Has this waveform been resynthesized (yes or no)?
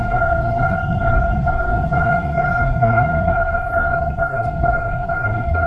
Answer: yes